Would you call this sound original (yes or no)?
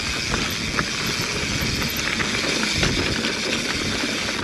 yes